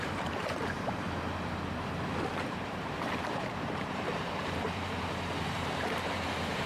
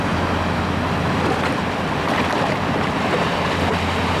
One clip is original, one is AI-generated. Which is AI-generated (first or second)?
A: first